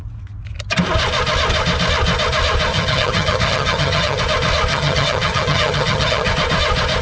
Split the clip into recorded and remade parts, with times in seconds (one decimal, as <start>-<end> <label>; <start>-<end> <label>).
0.0-2.7 recorded; 2.7-4.2 remade; 4.2-4.7 recorded; 4.7-6.3 remade; 6.3-7.0 recorded